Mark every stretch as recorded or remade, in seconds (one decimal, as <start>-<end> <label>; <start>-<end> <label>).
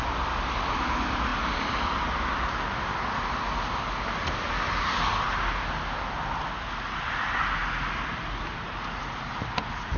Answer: 0.0-10.0 recorded